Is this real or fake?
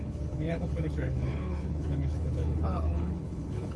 fake